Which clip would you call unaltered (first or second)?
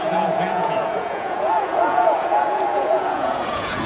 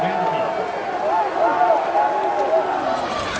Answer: second